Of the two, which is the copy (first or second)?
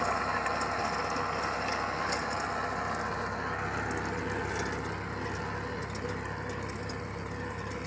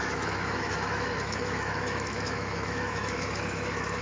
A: second